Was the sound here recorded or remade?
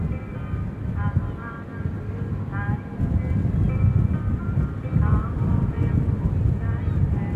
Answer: recorded